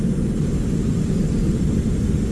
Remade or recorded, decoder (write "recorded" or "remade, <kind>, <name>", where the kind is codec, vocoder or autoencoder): recorded